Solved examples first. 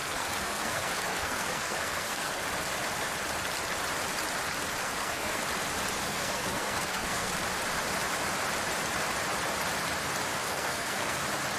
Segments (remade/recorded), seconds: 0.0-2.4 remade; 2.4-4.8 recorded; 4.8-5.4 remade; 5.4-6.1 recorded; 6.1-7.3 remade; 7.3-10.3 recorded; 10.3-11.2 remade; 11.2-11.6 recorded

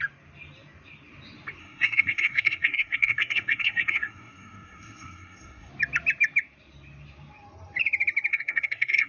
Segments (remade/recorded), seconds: 0.0-1.6 recorded; 1.6-5.7 remade; 5.7-8.3 recorded; 8.3-9.1 remade

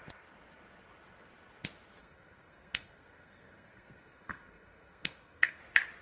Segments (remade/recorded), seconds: 0.0-2.0 recorded; 2.0-5.6 remade; 5.6-6.0 recorded

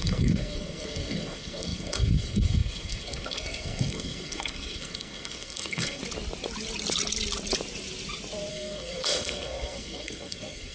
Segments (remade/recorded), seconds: 0.0-6.0 remade; 6.0-8.5 recorded; 8.5-10.7 remade

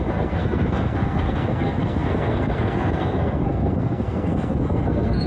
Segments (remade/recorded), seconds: 0.0-5.3 remade

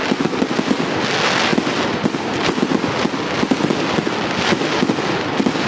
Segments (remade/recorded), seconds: 0.0-5.7 recorded

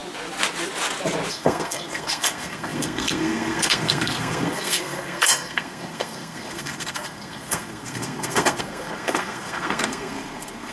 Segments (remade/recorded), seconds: 0.0-1.3 recorded; 1.3-10.7 remade

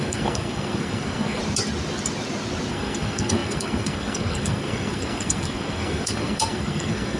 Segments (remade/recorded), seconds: 0.0-1.4 remade; 1.4-2.7 recorded; 2.7-7.2 remade